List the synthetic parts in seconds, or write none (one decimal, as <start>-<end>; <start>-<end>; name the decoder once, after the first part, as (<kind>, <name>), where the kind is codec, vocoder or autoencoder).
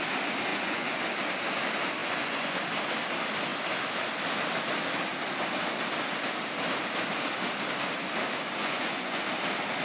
0.5-1.0 (vocoder, Vocos); 2.0-2.6; 8.6-9.2